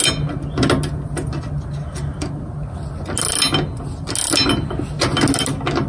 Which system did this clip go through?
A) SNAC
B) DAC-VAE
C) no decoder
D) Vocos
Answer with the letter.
C